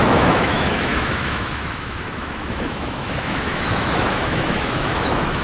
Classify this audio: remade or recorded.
remade